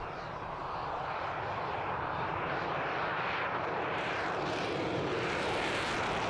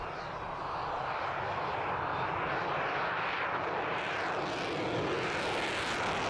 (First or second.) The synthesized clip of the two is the first